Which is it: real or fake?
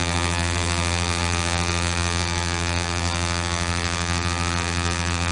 fake